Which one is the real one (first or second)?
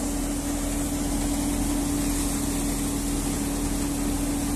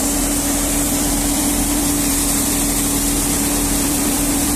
first